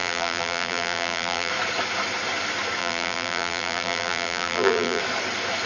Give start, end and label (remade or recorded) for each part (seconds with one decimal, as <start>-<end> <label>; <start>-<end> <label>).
0.0-1.5 remade; 1.5-2.8 recorded; 2.8-5.0 remade; 5.0-5.7 recorded